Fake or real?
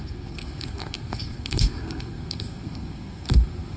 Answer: fake